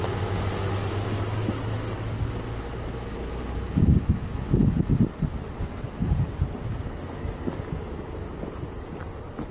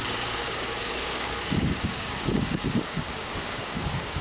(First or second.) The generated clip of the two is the second